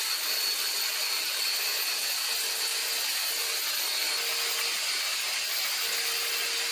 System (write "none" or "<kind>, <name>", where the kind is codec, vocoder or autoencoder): none